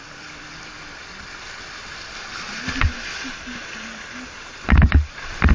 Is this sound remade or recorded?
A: recorded